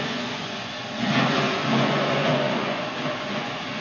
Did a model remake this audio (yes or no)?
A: yes